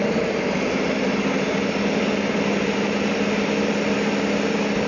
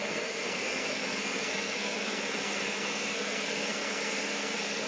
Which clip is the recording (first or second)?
first